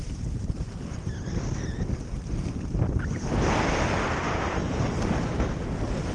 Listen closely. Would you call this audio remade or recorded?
recorded